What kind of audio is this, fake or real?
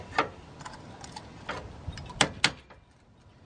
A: real